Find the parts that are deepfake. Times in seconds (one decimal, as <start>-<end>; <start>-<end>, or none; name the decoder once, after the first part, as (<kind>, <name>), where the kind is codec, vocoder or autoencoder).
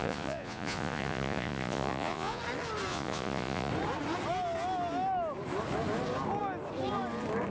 0.0-2.4 (vocoder, Vocos); 2.9-3.7